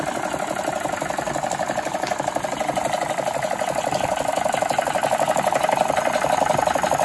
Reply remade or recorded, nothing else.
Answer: recorded